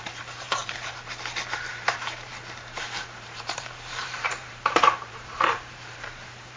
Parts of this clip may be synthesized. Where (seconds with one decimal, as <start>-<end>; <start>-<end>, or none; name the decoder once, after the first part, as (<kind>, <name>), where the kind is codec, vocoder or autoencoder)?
0.0-0.6 (vocoder, BigVGAN v2); 1.7-6.6